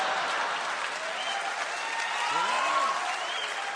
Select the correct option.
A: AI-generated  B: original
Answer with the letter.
B